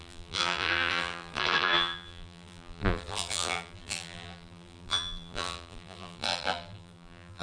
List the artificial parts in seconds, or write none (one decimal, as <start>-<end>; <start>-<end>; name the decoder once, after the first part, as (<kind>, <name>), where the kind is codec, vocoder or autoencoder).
0.0-7.4 (vocoder, BigVGAN v2)